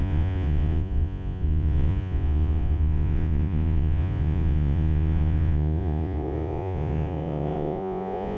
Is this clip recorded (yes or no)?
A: no